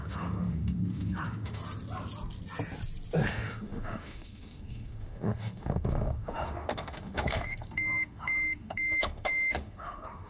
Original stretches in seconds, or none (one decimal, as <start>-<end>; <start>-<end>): 1.6-3.3